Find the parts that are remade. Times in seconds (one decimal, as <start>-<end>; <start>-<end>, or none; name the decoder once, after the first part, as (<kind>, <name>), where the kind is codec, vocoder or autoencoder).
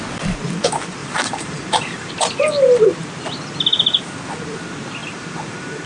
1.0-2.1 (vocoder, BigVGAN v2); 5.0-5.9